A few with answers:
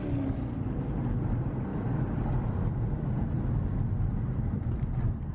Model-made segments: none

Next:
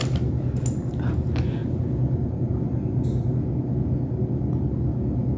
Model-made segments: none